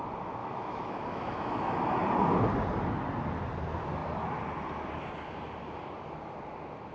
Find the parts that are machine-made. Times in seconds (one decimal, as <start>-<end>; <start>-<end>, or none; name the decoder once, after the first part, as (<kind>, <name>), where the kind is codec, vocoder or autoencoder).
0.4-1.8 (autoencoder, DAC-VAE)